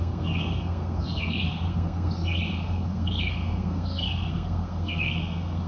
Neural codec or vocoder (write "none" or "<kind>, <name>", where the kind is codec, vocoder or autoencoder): codec, SNAC